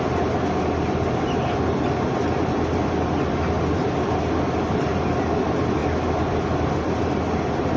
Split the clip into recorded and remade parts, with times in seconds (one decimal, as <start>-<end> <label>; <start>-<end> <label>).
0.0-7.8 recorded